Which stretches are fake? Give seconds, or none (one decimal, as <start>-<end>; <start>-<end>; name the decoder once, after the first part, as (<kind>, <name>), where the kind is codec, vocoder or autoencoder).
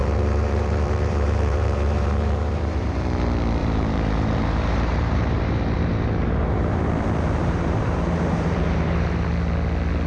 0.0-3.0 (vocoder, BigVGAN v2); 3.6-6.9; 7.4-9.3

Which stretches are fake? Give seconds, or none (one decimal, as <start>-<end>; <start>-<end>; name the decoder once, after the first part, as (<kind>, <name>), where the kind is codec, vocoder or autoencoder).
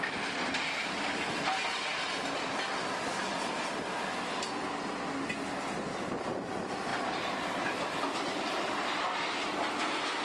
0.0-1.9 (vocoder, BigVGAN v2); 2.8-4.6; 5.8-6.9; 7.4-10.2